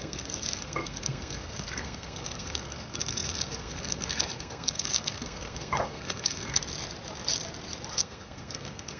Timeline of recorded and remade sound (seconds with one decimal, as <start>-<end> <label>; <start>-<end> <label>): 0.0-6.6 remade; 6.6-7.9 recorded; 7.9-9.0 remade